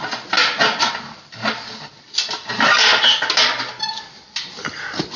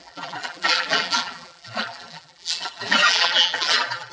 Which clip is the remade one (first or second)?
second